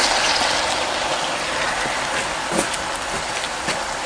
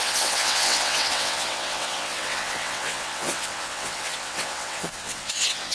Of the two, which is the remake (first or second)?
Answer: second